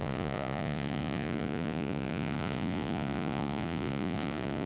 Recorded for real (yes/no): no